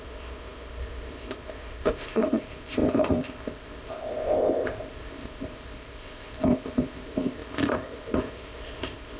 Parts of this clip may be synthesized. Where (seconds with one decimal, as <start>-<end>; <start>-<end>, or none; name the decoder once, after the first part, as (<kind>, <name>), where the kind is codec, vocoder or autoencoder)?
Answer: 0.0-9.2 (codec, ZipCodec)